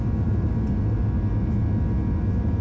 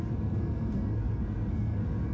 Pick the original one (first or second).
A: first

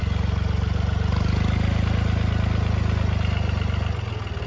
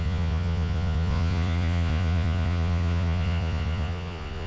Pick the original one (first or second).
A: first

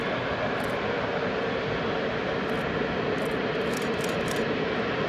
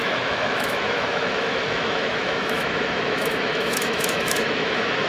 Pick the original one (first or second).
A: first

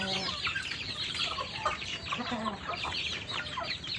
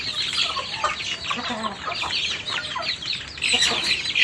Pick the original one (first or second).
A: second